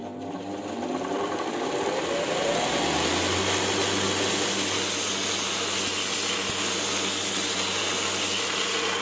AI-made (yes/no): no